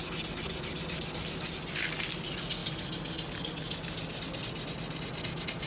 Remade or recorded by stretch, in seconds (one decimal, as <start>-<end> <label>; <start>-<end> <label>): 0.0-5.7 recorded